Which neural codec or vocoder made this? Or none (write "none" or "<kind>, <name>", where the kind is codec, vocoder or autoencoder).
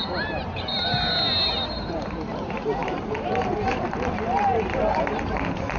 vocoder, BigVGAN v2